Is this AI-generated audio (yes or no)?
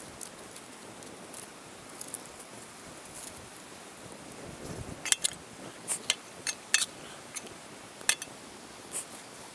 no